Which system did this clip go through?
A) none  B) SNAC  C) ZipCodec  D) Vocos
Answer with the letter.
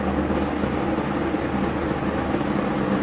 A